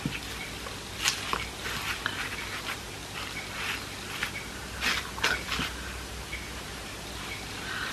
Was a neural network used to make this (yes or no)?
no